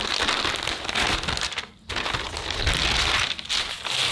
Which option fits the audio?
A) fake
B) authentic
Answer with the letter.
B